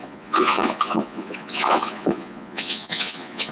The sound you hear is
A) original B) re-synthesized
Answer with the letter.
B